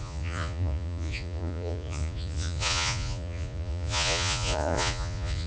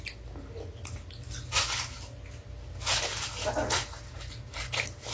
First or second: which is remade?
first